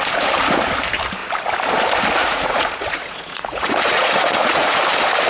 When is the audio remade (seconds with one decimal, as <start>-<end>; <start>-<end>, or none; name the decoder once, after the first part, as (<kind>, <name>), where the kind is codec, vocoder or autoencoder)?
2.2-4.8 (vocoder, Vocos)